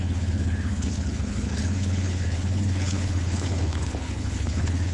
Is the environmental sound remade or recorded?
remade